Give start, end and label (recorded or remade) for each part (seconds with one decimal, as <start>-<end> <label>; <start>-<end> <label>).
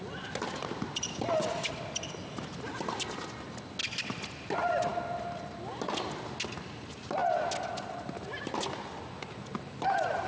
0.0-10.3 recorded